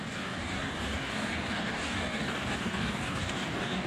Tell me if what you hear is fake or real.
fake